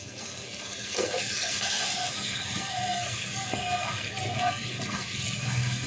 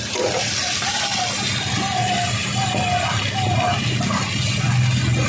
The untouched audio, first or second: second